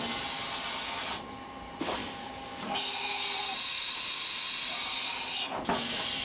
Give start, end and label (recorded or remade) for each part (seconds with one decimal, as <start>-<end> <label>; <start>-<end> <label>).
0.0-6.2 recorded